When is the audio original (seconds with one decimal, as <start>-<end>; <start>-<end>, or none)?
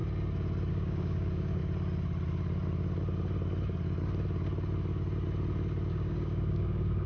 0.0-0.7; 1.6-5.9